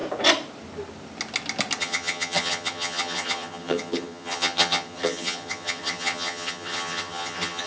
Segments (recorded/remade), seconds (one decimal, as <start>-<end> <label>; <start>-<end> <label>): 0.0-1.8 recorded; 1.8-7.7 remade